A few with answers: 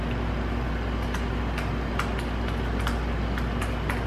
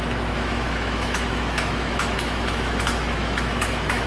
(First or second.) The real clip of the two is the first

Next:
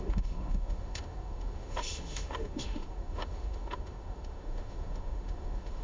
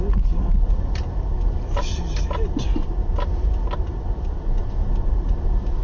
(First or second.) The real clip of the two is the second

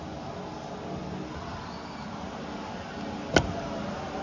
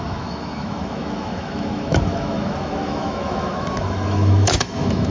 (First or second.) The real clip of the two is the first